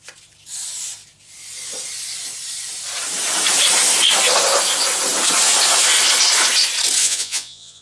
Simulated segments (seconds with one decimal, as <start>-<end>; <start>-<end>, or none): 7.0-7.8